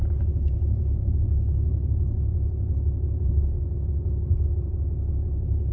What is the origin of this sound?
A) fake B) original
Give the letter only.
B